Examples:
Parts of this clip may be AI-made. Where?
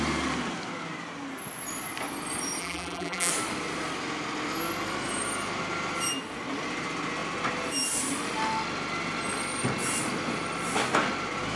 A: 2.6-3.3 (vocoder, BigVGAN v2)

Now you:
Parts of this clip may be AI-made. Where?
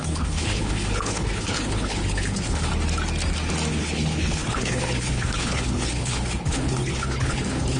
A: 0.0-2.7 (codec, HILCodec); 3.7-7.8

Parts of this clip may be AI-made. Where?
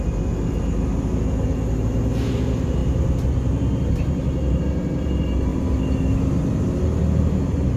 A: 2.8-4.6 (vocoder, BigVGAN v2)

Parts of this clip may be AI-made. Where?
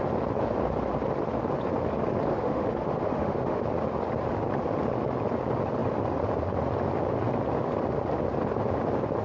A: 2.3-3.6 (autoencoder, DAC-VAE)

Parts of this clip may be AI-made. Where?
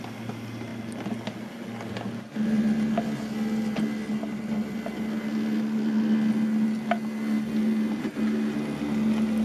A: none